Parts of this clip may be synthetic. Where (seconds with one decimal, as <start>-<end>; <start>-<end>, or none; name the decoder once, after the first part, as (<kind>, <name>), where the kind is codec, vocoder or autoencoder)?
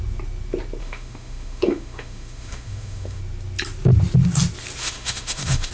0.8-3.2 (autoencoder, DAC-VAE); 4.8-5.7